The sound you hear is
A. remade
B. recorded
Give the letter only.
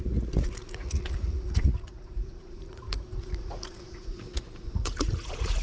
A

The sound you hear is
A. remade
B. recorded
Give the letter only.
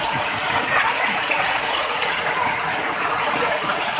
A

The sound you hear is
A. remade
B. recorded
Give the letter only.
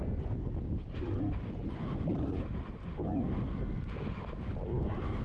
B